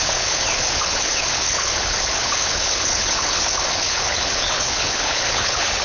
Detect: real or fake fake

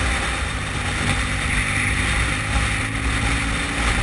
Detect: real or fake real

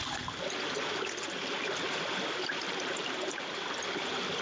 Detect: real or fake real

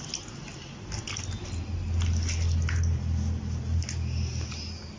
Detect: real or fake real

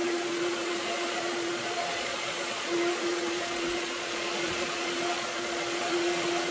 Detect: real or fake fake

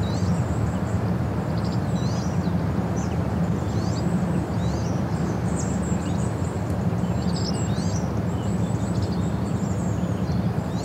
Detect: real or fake real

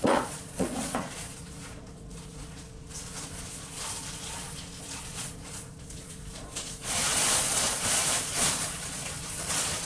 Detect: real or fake fake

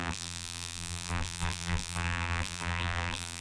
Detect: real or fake fake